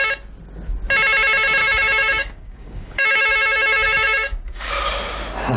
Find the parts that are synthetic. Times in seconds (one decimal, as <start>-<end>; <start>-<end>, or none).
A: 1.6-4.7